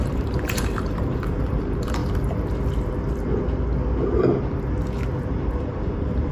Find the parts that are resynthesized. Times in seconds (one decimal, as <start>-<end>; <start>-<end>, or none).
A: 0.0-2.0; 5.3-6.3